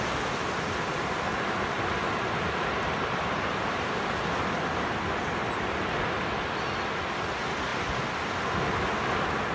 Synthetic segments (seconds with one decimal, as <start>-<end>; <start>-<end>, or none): none